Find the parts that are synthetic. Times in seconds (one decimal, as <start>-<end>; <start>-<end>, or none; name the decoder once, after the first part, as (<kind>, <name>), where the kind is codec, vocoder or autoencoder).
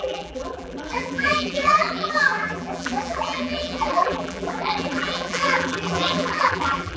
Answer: 0.0-7.0 (vocoder, BigVGAN v2)